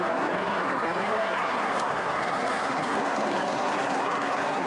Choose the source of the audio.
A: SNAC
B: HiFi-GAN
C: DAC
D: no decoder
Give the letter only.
A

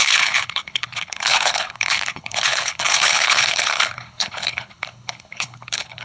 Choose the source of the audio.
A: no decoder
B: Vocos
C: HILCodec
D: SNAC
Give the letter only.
C